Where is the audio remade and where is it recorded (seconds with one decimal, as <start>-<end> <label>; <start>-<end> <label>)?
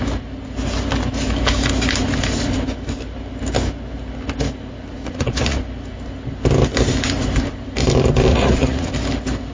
0.0-5.0 recorded; 5.0-5.6 remade; 5.6-8.3 recorded; 8.3-8.9 remade; 8.9-9.5 recorded